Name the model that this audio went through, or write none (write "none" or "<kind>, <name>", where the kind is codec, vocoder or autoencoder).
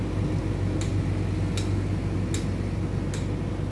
none